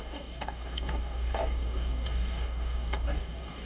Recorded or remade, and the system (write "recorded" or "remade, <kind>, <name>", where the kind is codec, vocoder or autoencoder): remade, codec, DAC